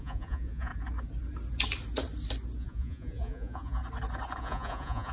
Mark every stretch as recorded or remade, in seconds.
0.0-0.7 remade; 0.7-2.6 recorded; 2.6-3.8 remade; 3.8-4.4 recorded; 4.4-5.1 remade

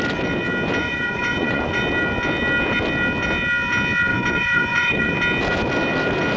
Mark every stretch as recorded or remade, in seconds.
0.0-0.8 recorded; 0.8-1.8 remade; 1.8-4.1 recorded; 4.1-5.1 remade; 5.1-6.4 recorded

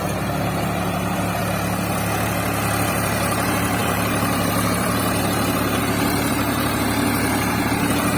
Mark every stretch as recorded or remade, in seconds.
0.0-1.4 remade; 1.4-2.9 recorded; 2.9-8.2 remade

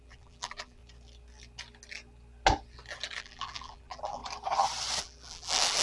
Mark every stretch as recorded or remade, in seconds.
0.0-0.8 remade; 0.8-3.2 recorded; 3.2-4.2 remade; 4.2-5.0 recorded; 5.0-5.8 remade